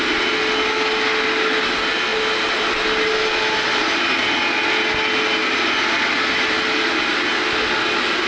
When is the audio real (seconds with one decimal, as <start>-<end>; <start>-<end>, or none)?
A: 0.0-8.3